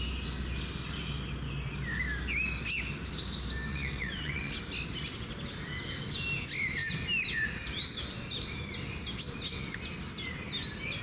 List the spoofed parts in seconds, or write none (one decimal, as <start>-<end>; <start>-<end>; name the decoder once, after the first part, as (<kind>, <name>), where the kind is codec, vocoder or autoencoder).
3.7-4.6 (vocoder, WaveNeXt)